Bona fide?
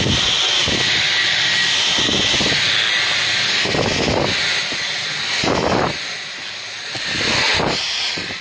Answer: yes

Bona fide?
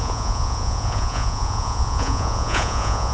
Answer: no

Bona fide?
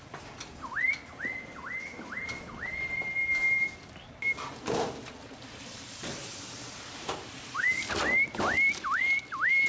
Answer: yes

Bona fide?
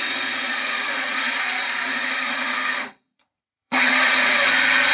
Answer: no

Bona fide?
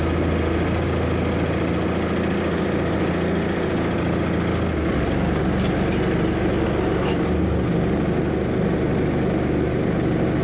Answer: yes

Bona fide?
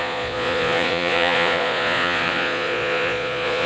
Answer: no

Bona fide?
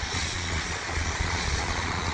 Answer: no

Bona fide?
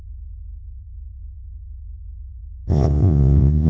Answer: no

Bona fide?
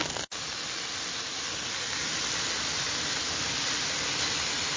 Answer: yes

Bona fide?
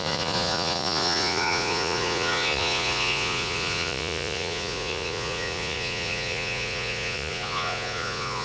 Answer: no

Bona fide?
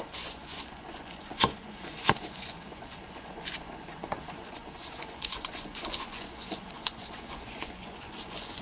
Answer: no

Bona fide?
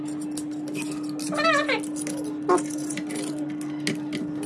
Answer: yes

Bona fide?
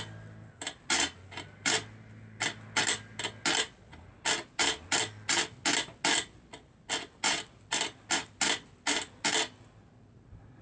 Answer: yes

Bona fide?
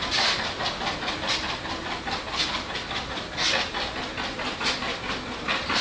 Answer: yes